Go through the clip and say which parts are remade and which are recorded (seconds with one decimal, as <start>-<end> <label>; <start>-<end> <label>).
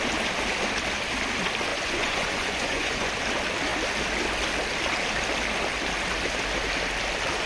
0.0-1.7 recorded; 1.7-3.1 remade; 3.1-7.5 recorded